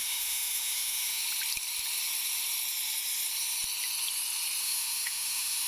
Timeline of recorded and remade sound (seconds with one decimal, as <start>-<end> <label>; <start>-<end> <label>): 0.0-1.2 remade; 1.2-4.6 recorded; 4.6-5.7 remade